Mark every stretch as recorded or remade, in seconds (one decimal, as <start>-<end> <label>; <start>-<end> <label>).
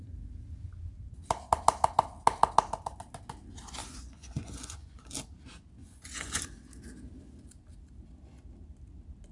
0.0-3.8 recorded; 3.8-5.1 remade; 5.1-5.8 recorded; 5.8-6.4 remade; 6.4-9.3 recorded